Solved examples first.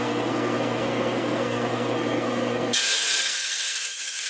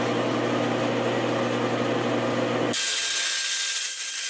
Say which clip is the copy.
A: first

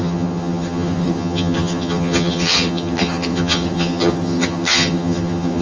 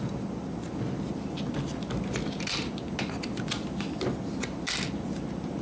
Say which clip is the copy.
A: first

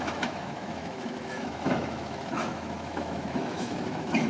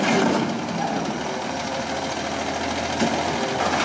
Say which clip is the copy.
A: first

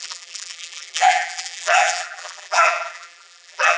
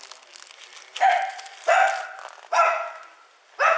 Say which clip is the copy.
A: first